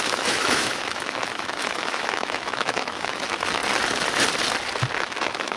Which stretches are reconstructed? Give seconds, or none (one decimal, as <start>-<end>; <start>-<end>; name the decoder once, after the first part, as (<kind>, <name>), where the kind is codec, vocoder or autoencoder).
0.0-3.6 (autoencoder, DAC-VAE); 4.9-5.6